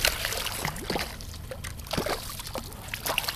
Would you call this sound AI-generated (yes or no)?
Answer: no